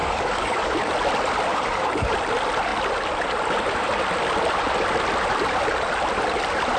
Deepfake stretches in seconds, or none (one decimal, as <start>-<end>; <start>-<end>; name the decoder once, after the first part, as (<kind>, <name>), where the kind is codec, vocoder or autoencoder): 0.0-0.9 (codec, DAC); 1.5-2.1